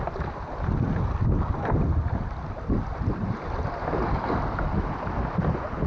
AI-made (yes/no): no